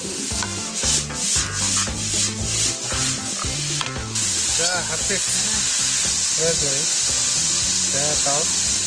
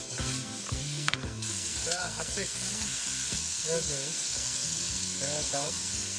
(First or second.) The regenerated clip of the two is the second